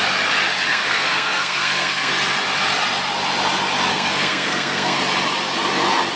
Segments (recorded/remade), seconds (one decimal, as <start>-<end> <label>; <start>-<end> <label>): 0.0-0.7 recorded; 0.7-2.1 remade; 2.1-3.9 recorded; 3.9-5.0 remade; 5.0-6.2 recorded

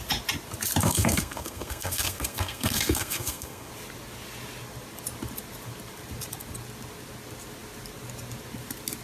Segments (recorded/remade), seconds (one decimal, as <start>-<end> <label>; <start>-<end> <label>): 0.0-0.8 recorded; 0.8-3.7 remade; 3.7-9.0 recorded

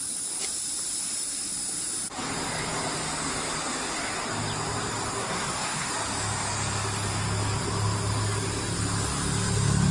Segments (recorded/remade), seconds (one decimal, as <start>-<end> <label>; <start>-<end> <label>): 0.0-5.2 recorded; 5.2-5.9 remade; 5.9-9.9 recorded

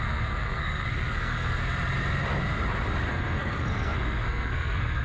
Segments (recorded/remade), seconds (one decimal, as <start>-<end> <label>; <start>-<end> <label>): 0.0-1.6 remade; 1.6-3.1 recorded; 3.1-5.0 remade

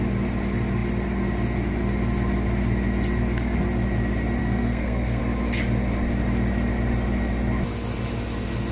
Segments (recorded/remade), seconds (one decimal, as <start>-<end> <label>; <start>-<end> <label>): 0.0-4.4 recorded; 4.4-5.2 remade; 5.2-8.7 recorded

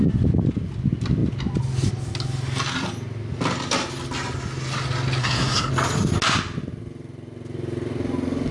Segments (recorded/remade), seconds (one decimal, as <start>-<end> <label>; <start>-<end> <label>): 0.0-5.2 recorded; 5.2-5.7 remade; 5.7-8.5 recorded